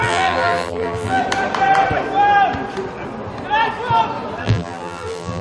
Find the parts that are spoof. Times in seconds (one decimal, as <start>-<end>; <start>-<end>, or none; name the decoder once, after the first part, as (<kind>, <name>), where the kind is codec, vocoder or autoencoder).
0.0-1.2 (vocoder, BigVGAN v2); 4.4-5.4